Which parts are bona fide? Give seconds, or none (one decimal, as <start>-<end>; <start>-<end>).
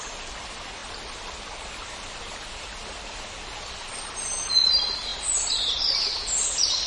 0.0-6.9